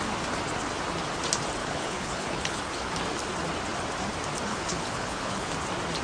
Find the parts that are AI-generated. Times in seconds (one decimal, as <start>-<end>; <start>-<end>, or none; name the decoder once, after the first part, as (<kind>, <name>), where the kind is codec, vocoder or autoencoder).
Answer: 1.6-2.9 (codec, HILCodec); 4.5-5.5